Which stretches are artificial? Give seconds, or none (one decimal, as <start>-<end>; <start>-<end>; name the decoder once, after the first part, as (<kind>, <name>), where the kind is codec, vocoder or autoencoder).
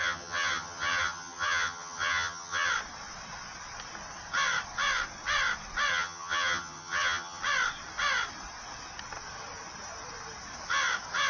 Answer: 0.0-2.7 (vocoder, HiFi-GAN); 5.9-7.4